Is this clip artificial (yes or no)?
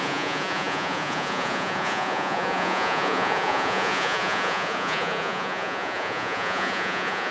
yes